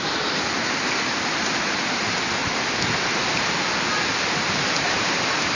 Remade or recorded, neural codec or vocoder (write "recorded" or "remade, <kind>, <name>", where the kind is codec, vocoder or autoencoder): recorded